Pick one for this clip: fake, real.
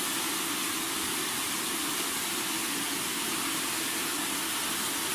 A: real